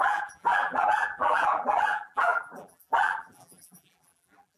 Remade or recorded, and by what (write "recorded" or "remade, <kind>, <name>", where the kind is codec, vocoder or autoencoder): remade, vocoder, BigVGAN v2